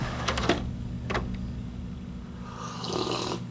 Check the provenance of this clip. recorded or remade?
remade